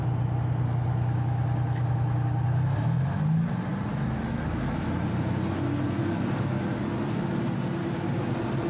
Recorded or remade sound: recorded